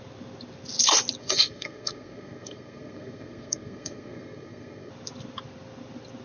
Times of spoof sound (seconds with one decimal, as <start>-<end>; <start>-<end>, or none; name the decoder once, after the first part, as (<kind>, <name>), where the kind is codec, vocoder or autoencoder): 1.2-4.9 (codec, SNAC)